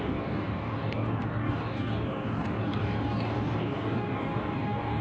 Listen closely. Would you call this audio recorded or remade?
remade